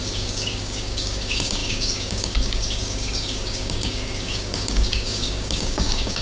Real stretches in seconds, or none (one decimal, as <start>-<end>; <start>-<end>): none